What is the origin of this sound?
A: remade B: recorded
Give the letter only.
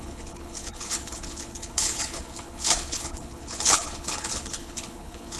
A